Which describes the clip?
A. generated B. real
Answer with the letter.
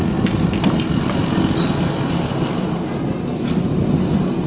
B